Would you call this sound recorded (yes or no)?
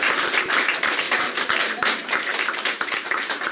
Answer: no